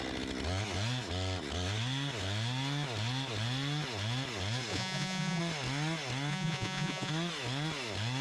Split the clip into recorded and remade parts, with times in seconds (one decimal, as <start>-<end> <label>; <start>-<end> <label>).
0.0-4.7 recorded; 4.7-5.4 remade; 5.4-6.3 recorded; 6.3-7.1 remade; 7.1-8.2 recorded